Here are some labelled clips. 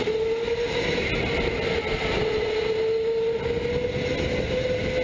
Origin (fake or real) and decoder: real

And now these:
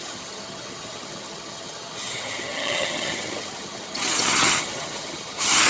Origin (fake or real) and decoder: fake, vocoder, HiFi-GAN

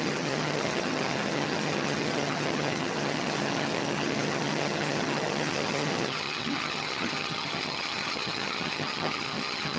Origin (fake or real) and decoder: fake, vocoder, HiFi-GAN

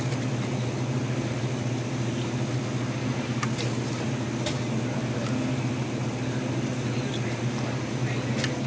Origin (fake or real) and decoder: real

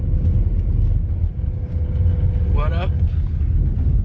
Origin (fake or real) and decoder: real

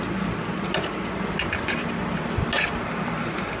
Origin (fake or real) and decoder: real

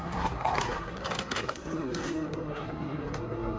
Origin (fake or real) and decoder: fake, codec, SNAC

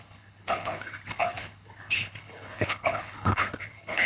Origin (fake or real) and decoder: fake, codec, HILCodec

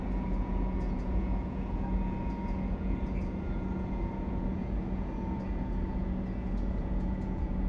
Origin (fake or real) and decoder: fake, vocoder, Vocos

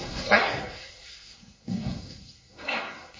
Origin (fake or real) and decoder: fake, codec, SNAC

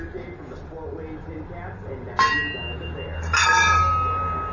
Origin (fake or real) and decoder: real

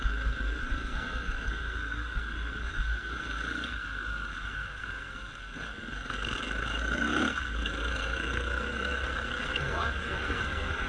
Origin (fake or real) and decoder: fake, codec, SNAC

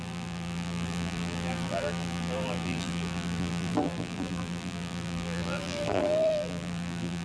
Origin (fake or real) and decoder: fake, vocoder, BigVGAN v2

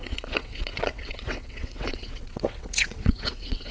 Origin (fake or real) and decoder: fake, vocoder, WaveNeXt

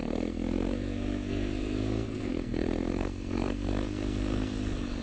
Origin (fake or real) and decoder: fake, codec, SNAC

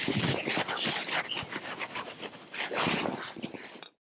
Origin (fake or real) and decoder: real